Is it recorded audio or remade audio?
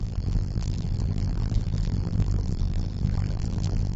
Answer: remade